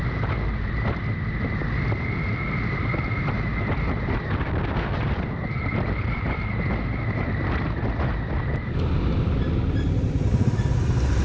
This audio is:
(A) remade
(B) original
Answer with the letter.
B